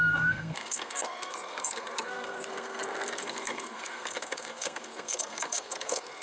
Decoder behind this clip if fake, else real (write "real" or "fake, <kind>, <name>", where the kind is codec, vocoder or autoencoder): fake, codec, SNAC